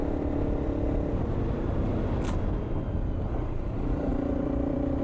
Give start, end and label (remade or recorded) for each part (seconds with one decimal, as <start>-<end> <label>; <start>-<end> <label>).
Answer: 0.0-4.1 recorded; 4.1-5.0 remade